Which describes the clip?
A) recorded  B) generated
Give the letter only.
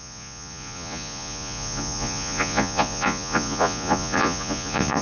B